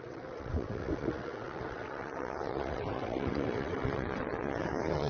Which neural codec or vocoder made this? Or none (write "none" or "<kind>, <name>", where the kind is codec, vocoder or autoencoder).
vocoder, WaveNeXt